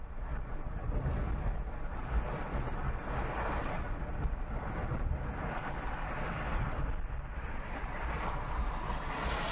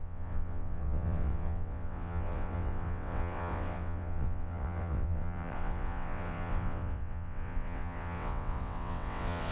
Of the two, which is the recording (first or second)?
first